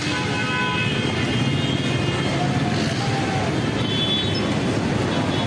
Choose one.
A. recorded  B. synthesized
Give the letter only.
A